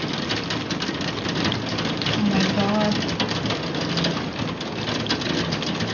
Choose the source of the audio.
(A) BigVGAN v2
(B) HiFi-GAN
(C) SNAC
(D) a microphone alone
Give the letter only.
D